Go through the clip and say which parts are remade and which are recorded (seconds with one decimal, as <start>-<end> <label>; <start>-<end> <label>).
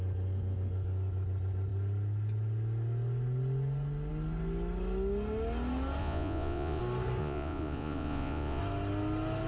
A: 0.0-6.0 recorded; 6.0-6.8 remade; 6.8-7.2 recorded; 7.2-8.6 remade; 8.6-9.5 recorded